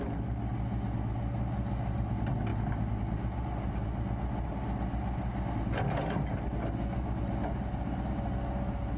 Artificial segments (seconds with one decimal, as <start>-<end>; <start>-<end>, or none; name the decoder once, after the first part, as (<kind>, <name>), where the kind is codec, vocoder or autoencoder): none